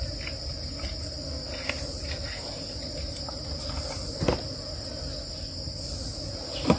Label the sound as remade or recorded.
recorded